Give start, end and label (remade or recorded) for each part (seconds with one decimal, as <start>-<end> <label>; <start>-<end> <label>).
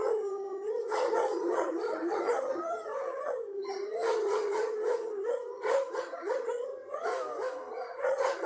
0.0-7.1 remade; 7.1-7.7 recorded; 7.7-8.5 remade